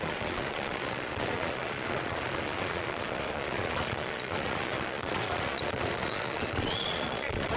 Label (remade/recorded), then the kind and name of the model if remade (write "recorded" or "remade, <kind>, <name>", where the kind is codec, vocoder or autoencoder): remade, vocoder, Vocos